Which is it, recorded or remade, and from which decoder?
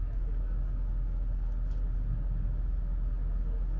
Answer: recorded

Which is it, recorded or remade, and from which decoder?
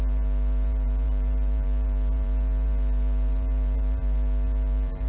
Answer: remade, vocoder, BigVGAN v2